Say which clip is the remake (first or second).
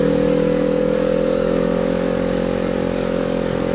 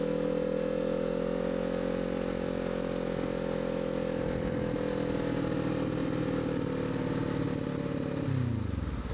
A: first